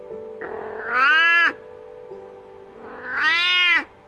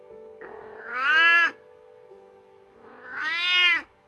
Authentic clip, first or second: first